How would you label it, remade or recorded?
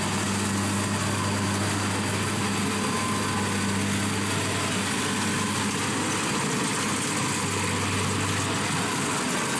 recorded